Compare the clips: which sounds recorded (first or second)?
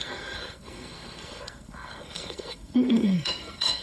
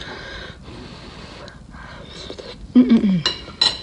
second